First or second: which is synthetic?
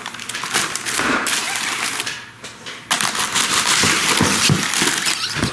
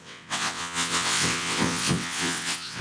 second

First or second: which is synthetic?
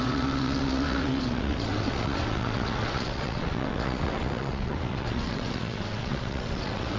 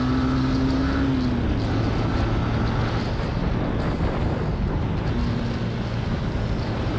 first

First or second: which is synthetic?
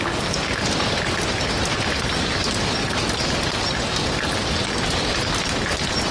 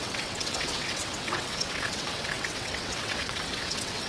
second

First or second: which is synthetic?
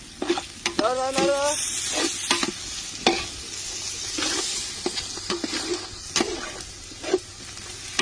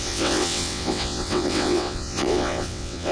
second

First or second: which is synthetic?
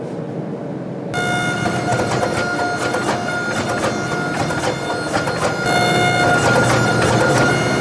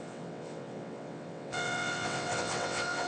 second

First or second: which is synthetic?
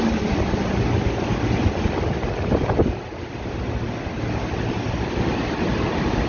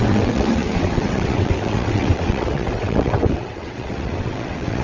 second